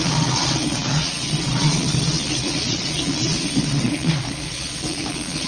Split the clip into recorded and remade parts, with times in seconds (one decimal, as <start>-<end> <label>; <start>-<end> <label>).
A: 0.0-5.5 remade